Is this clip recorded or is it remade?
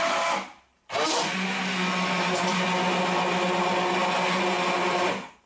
recorded